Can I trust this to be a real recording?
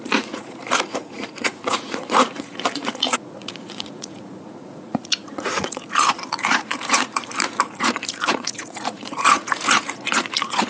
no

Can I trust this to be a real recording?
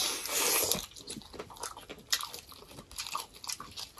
yes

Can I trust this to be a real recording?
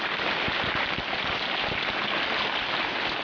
yes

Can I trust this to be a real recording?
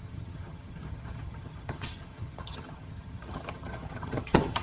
no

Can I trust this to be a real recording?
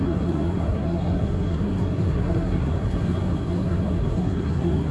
no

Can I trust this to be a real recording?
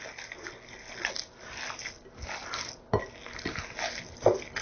yes